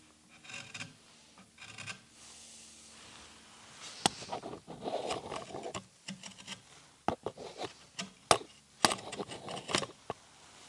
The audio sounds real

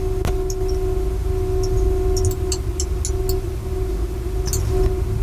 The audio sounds real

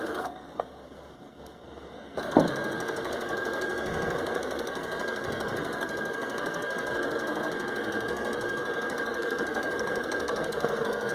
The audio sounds fake